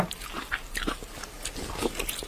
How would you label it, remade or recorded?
recorded